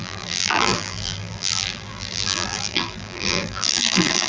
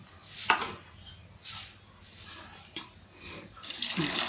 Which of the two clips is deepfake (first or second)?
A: first